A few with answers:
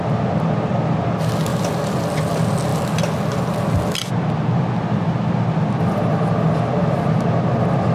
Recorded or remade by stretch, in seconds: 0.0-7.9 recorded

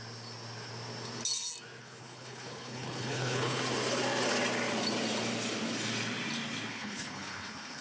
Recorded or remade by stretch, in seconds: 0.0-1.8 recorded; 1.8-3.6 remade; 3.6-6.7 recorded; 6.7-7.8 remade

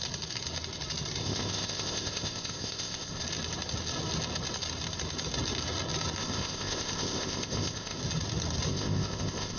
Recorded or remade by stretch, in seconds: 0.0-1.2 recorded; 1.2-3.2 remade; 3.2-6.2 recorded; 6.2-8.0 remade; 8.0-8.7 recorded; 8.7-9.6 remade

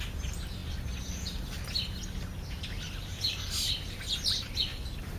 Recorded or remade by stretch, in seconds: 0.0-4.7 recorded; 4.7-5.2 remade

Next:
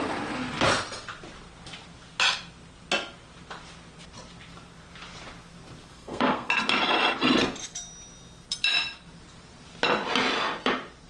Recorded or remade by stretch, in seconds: 0.0-5.9 recorded; 5.9-6.5 remade; 6.5-11.1 recorded

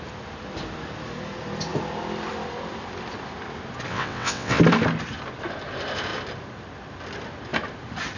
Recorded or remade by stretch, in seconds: 0.0-3.9 recorded; 3.9-4.6 remade; 4.6-8.2 recorded